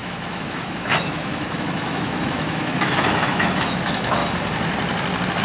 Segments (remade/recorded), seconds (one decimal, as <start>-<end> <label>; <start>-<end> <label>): 0.0-4.2 remade; 4.2-5.4 recorded